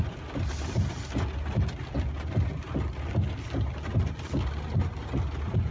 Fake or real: real